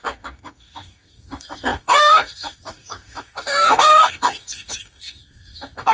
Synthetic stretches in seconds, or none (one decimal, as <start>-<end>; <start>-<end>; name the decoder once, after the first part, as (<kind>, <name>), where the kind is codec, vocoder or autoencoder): 0.0-5.9 (codec, DAC)